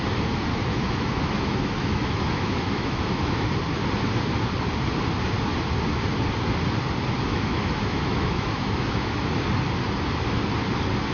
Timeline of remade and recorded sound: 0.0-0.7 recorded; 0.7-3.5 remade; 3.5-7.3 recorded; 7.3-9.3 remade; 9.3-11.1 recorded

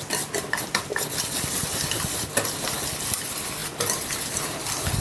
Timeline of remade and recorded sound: 0.0-5.0 recorded

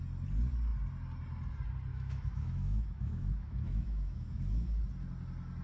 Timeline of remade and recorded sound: 0.0-1.9 recorded; 1.9-4.8 remade; 4.8-5.6 recorded

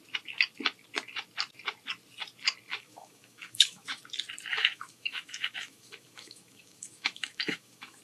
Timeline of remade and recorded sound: 0.0-2.7 recorded; 2.7-4.0 remade; 4.0-4.5 recorded; 4.5-8.0 remade

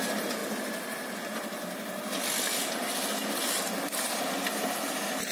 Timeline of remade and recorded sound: 0.0-5.3 recorded